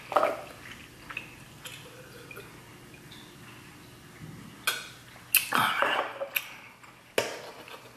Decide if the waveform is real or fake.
real